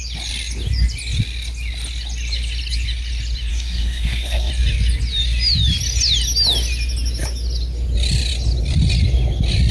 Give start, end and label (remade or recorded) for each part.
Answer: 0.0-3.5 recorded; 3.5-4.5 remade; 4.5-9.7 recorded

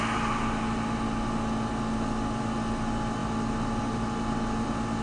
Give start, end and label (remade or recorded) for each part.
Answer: 0.0-5.0 recorded

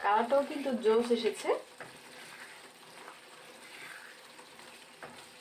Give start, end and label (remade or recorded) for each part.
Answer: 0.0-1.3 recorded; 1.3-5.4 remade

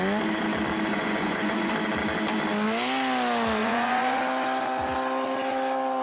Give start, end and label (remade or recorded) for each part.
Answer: 0.0-0.9 recorded; 0.9-1.7 remade; 1.7-3.6 recorded; 3.6-4.2 remade; 4.2-6.0 recorded

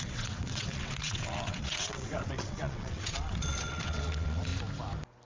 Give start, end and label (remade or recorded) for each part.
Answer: 0.0-4.5 remade; 4.5-5.3 recorded

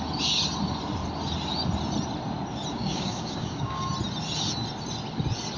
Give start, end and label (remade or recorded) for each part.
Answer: 0.0-2.7 recorded; 2.7-3.9 remade; 3.9-5.6 recorded

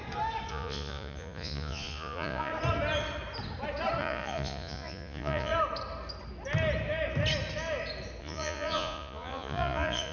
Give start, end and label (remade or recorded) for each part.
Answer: 0.0-0.5 recorded; 0.5-2.5 remade; 2.5-4.0 recorded; 4.0-5.5 remade; 5.5-8.2 recorded; 8.2-10.1 remade